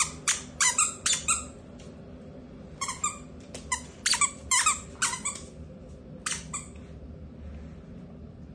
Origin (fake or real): real